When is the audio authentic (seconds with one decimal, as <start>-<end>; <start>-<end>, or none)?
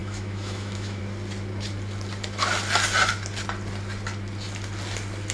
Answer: 1.0-5.3